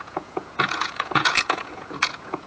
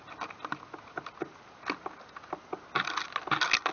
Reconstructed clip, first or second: first